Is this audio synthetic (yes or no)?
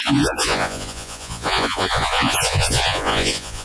yes